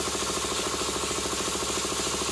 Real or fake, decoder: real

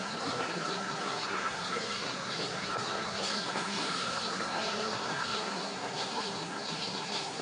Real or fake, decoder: fake, codec, SNAC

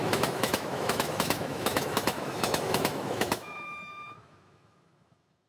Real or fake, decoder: fake, autoencoder, DAC-VAE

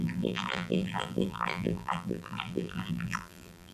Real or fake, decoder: fake, vocoder, BigVGAN v2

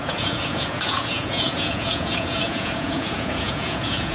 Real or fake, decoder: fake, vocoder, Vocos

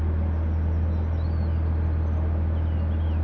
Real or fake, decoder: real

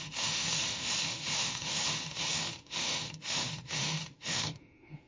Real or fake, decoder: fake, autoencoder, DAC-VAE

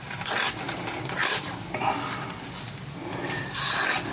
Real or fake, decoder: real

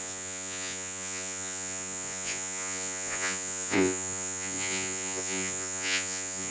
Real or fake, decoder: fake, vocoder, Vocos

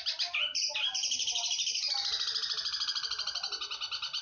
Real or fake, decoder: real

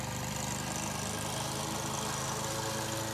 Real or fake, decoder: real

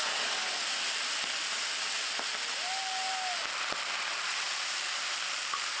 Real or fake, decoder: real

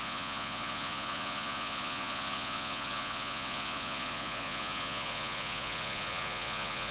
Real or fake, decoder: fake, vocoder, Vocos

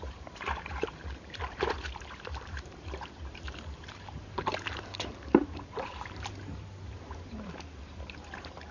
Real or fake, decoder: fake, vocoder, BigVGAN v2